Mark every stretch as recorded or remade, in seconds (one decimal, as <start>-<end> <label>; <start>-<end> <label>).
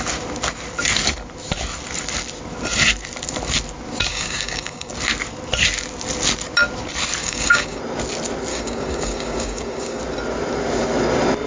0.0-4.1 recorded; 4.1-4.9 remade; 4.9-7.2 recorded; 7.2-7.8 remade; 7.8-8.5 recorded; 8.5-10.0 remade; 10.0-11.5 recorded